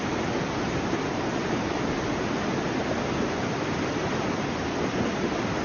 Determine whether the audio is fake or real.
real